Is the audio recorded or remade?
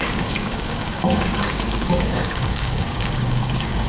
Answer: remade